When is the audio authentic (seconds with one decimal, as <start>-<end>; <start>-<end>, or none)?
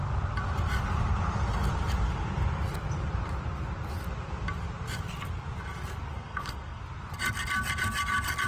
0.0-6.1; 6.8-8.5